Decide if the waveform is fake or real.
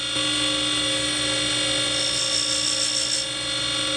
real